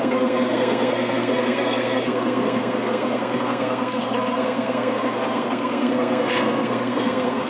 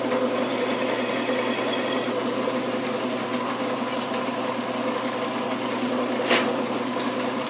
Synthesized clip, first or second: first